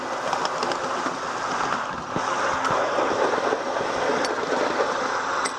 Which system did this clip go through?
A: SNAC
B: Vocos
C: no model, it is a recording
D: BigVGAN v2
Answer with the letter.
C